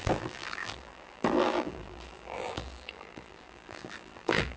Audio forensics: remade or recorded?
remade